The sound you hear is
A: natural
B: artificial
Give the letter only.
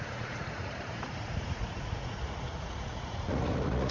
B